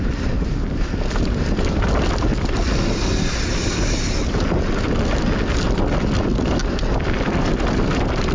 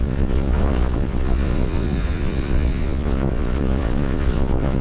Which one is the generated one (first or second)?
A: second